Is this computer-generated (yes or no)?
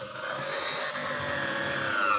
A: no